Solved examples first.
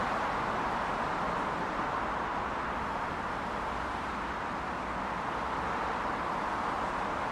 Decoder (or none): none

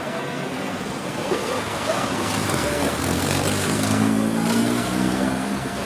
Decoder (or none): codec, SNAC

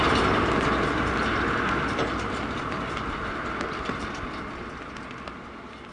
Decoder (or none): none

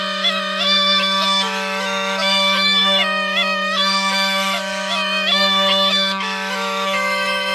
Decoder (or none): autoencoder, DAC-VAE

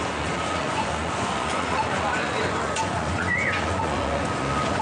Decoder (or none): vocoder, Vocos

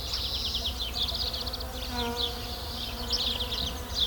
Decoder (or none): none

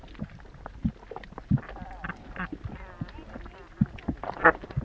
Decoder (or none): none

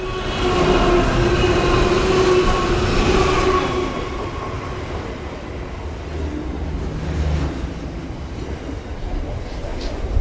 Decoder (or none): none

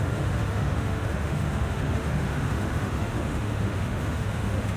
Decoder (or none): autoencoder, DAC-VAE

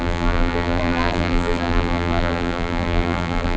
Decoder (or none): vocoder, BigVGAN v2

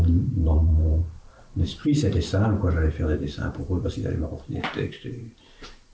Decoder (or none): vocoder, BigVGAN v2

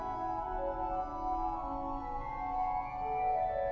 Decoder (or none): none